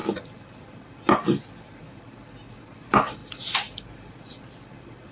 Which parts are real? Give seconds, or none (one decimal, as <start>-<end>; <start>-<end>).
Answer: 0.0-1.8